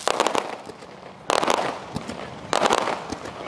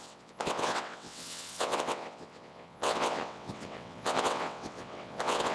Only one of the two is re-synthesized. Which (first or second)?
second